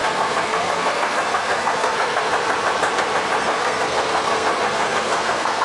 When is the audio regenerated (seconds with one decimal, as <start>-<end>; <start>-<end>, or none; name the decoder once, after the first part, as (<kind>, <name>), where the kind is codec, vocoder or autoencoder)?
0.0-2.3 (codec, SNAC); 3.4-5.6